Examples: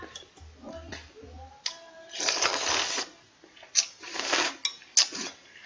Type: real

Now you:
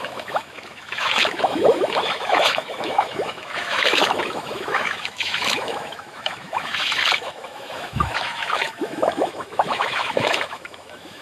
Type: fake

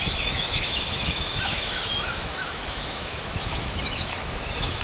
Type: fake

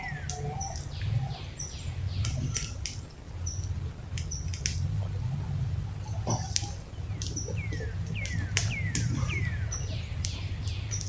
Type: real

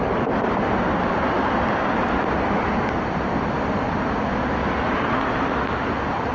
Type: real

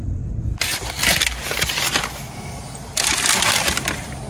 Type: real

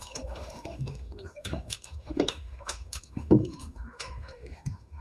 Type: fake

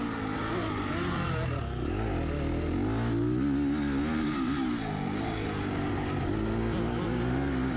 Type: real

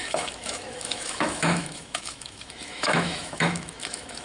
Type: fake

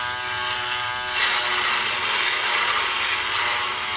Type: real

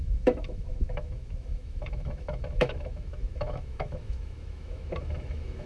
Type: fake